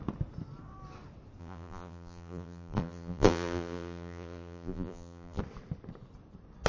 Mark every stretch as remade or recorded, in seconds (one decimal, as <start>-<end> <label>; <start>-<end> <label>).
0.0-1.4 recorded; 1.4-5.4 remade; 5.4-6.7 recorded